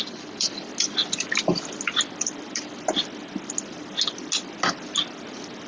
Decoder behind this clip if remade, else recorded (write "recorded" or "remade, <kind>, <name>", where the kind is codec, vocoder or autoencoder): recorded